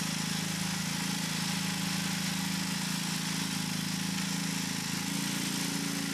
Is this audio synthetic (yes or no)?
no